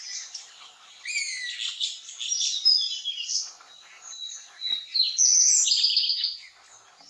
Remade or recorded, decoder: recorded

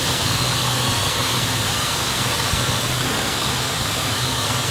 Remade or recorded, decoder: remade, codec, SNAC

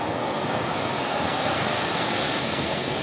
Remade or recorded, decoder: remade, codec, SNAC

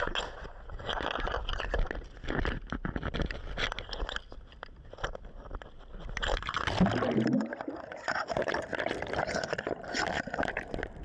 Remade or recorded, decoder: recorded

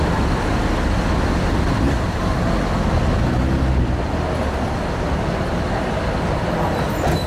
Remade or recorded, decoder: recorded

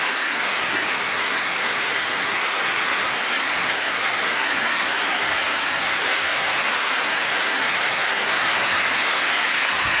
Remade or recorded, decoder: remade, codec, SNAC